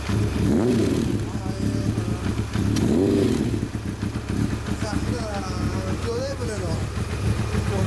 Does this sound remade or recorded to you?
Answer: recorded